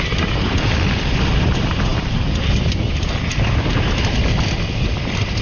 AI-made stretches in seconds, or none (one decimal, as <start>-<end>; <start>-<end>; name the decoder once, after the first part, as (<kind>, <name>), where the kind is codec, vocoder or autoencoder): none